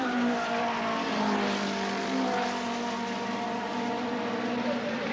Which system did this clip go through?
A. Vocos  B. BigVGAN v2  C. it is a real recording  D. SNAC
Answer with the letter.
C